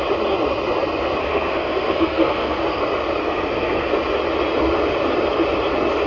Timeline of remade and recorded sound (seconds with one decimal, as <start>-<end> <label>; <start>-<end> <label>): 0.0-1.2 recorded; 1.2-2.8 remade; 2.8-3.2 recorded; 3.2-3.9 remade; 3.9-6.1 recorded